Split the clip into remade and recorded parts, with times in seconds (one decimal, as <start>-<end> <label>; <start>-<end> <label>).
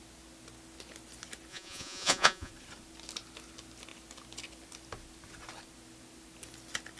0.0-1.5 recorded; 1.5-2.5 remade; 2.5-7.0 recorded